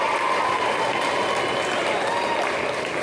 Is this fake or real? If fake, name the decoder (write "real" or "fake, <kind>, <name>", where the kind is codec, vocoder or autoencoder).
real